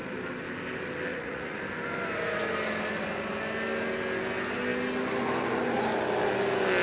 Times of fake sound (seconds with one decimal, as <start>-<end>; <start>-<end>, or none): 1.1-1.6

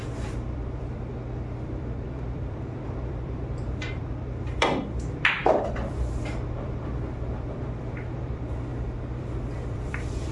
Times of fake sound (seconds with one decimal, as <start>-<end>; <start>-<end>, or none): 0.0-8.7; 9.2-10.3

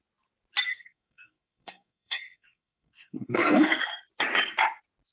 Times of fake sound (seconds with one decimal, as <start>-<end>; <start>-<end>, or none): 0.7-3.8